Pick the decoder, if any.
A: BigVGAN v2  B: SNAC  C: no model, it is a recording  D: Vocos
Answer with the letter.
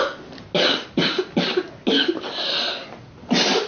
C